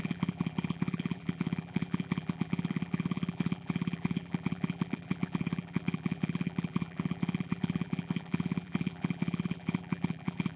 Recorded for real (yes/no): no